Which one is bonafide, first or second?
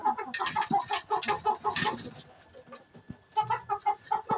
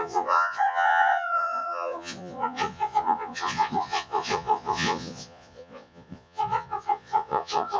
first